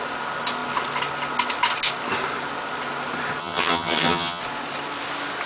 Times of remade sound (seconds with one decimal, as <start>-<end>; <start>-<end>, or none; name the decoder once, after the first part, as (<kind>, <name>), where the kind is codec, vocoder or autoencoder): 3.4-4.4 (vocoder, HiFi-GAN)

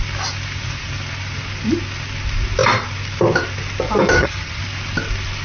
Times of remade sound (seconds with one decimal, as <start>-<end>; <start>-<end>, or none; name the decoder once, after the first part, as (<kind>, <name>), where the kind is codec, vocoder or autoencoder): 4.1-4.6 (vocoder, HiFi-GAN)

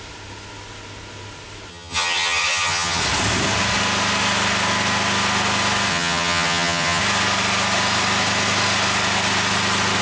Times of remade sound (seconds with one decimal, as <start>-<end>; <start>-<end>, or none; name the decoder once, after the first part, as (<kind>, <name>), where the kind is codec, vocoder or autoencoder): 1.7-3.0 (vocoder, HiFi-GAN); 5.9-7.0

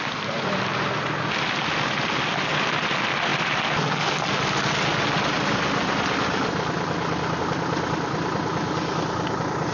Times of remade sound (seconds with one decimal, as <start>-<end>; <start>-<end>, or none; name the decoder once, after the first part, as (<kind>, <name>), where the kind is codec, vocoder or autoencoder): none